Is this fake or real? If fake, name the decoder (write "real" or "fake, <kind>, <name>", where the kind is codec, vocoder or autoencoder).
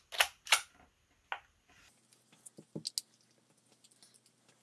real